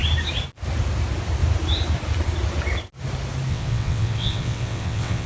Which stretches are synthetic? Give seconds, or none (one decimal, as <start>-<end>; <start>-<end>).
3.5-5.3